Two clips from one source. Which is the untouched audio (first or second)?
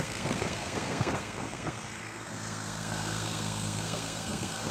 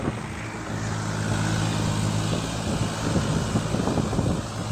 second